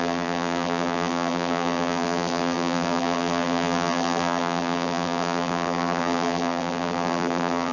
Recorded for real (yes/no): no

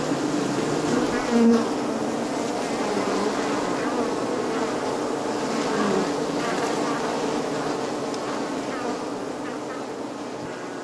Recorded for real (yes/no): yes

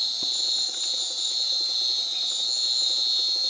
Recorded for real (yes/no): yes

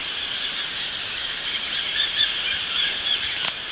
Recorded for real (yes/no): no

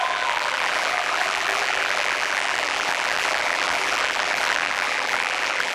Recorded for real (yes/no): no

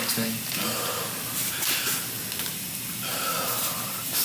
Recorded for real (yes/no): yes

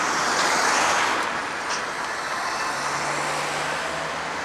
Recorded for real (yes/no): yes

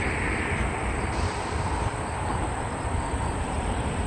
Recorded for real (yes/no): no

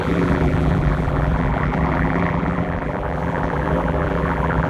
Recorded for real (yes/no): no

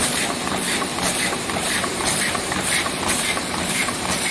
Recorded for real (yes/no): no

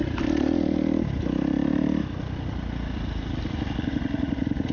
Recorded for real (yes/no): no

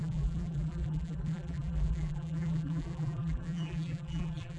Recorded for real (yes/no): no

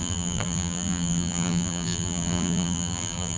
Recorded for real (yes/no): no